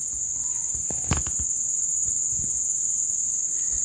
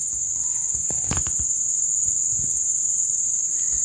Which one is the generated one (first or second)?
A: second